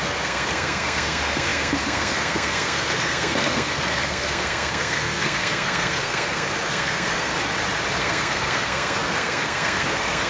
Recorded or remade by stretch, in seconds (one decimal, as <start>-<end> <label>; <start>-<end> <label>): 0.0-7.3 remade; 7.3-8.0 recorded; 8.0-10.3 remade